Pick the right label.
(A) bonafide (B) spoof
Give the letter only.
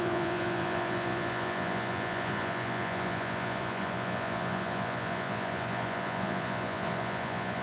B